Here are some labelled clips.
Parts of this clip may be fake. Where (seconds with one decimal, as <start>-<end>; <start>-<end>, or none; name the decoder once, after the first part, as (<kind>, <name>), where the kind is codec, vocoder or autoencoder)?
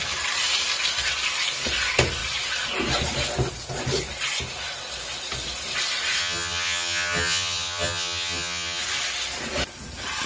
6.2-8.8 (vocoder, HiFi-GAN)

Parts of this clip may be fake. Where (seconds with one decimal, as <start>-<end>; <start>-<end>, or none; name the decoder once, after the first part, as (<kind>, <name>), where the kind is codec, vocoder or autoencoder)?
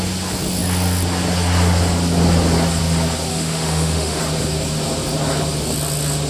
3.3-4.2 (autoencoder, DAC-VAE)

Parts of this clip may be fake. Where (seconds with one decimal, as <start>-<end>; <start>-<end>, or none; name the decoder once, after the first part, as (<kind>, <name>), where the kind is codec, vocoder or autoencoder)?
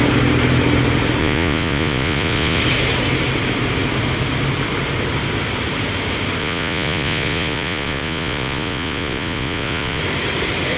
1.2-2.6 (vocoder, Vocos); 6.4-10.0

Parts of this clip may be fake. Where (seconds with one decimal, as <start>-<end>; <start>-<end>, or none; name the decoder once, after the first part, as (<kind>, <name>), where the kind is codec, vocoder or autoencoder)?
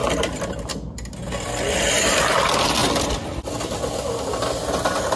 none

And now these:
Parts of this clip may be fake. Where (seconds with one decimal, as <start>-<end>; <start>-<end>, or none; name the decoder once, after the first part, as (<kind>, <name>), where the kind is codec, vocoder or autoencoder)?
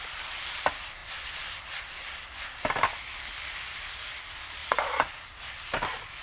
4.6-5.1 (vocoder, Vocos)